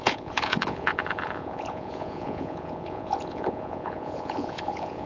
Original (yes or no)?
no